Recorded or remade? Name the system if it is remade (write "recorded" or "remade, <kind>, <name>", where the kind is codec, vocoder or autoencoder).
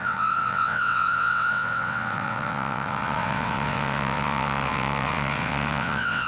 remade, vocoder, WaveNeXt